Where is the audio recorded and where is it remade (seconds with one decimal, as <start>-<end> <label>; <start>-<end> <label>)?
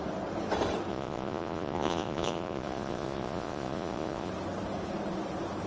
0.0-0.9 recorded; 0.9-4.3 remade; 4.3-5.7 recorded